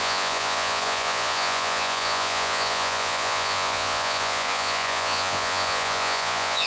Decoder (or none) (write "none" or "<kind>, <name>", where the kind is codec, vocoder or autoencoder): vocoder, Vocos